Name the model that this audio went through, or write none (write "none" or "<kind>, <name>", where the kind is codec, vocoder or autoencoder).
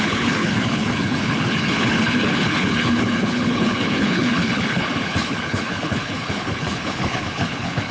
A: codec, HILCodec